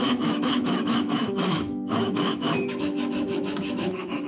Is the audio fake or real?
fake